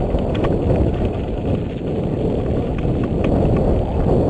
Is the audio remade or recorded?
recorded